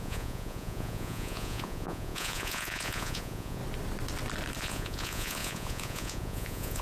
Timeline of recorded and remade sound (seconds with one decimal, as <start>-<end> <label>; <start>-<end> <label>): 0.0-3.6 remade; 3.6-4.6 recorded; 4.6-6.8 remade